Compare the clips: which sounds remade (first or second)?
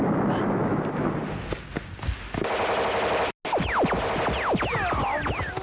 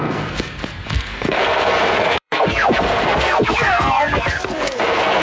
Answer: second